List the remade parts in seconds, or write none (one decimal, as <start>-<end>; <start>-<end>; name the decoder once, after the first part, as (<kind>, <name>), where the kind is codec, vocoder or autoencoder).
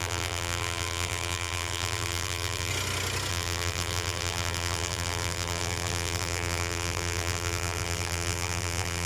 0.0-2.7 (vocoder, BigVGAN v2); 3.3-9.1